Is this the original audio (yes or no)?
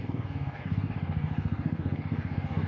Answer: no